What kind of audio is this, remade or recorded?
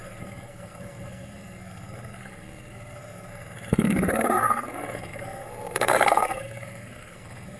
remade